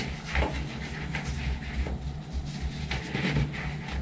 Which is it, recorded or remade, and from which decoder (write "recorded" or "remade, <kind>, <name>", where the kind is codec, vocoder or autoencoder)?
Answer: recorded